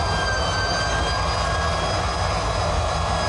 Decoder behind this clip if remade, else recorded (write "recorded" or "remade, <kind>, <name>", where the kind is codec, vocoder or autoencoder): recorded